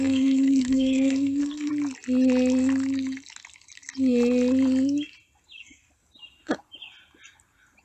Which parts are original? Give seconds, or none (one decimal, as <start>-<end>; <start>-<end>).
1.7-5.6; 6.0-7.8